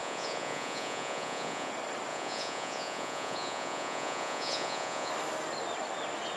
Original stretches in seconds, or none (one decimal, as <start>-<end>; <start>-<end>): 1.7-2.1; 5.1-6.4